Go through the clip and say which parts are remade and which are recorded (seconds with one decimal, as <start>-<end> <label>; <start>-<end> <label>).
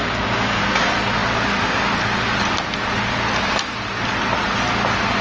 0.0-0.6 remade; 0.6-5.2 recorded